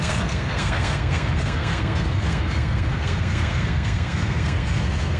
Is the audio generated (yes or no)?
yes